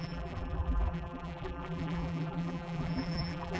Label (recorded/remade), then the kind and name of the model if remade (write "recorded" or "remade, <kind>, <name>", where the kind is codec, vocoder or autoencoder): remade, vocoder, BigVGAN v2